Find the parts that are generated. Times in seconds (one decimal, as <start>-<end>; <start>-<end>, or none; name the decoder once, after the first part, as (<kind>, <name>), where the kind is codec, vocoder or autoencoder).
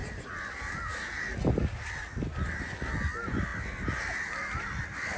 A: 0.0-3.1 (vocoder, BigVGAN v2); 3.5-5.2